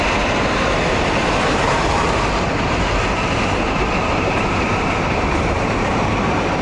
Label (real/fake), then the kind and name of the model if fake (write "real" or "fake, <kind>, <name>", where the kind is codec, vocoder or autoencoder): fake, vocoder, BigVGAN v2